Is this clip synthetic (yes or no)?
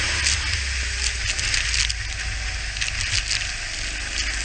no